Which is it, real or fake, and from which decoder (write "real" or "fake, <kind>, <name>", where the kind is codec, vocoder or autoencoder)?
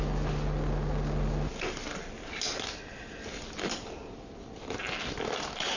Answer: real